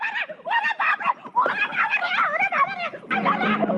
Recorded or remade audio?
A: recorded